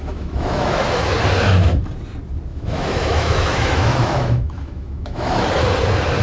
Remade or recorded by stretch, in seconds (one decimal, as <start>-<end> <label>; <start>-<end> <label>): 0.0-0.8 remade; 0.8-2.5 recorded; 2.5-5.5 remade; 5.5-6.2 recorded